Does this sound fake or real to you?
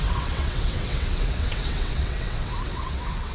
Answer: fake